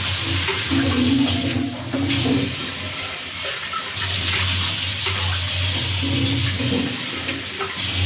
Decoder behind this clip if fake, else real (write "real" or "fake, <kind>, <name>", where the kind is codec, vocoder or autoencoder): real